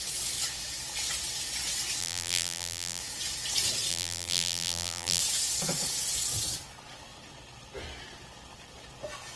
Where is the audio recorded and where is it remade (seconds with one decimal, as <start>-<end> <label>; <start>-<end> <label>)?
0.0-2.0 recorded; 2.0-3.0 remade; 3.0-3.9 recorded; 3.9-5.2 remade; 5.2-9.4 recorded